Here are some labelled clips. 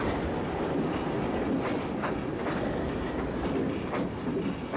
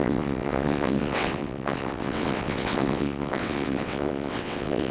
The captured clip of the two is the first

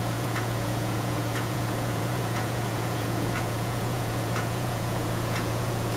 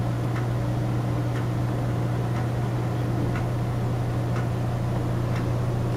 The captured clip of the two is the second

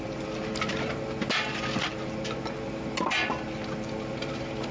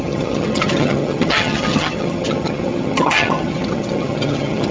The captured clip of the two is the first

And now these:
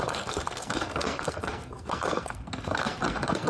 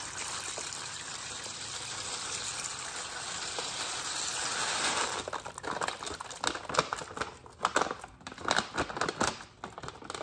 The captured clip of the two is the second